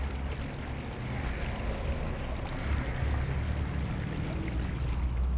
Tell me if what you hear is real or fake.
real